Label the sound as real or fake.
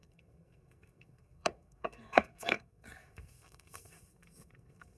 fake